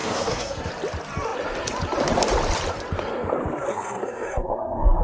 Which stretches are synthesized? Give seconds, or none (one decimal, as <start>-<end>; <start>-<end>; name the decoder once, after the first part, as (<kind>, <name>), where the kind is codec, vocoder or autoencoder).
0.0-0.7 (codec, SNAC); 3.7-5.0